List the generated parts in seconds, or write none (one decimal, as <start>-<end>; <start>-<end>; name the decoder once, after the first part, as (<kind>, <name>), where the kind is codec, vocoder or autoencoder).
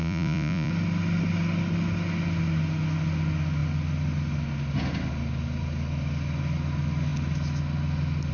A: 0.0-0.7 (vocoder, Vocos)